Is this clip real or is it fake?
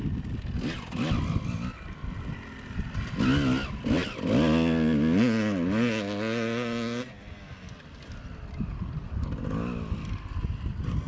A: real